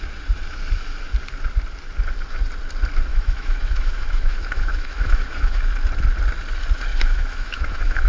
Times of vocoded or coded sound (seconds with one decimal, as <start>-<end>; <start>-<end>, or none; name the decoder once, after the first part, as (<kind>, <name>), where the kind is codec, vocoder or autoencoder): 3.1-5.6 (autoencoder, DAC-VAE); 6.9-8.1